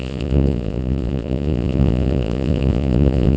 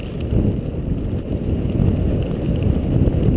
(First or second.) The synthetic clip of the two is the first